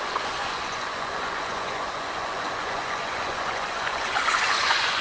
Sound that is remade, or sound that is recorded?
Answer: remade